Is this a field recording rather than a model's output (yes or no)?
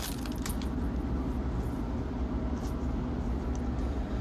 yes